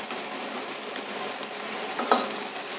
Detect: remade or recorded recorded